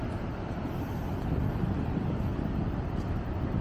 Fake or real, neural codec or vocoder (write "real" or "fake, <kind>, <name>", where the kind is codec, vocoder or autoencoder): real